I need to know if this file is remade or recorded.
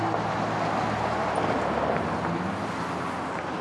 recorded